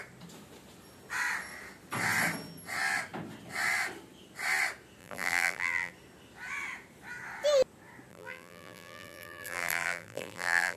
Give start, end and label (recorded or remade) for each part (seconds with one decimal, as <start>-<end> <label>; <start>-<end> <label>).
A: 0.0-5.0 recorded; 5.0-5.9 remade; 5.9-8.1 recorded; 8.1-10.8 remade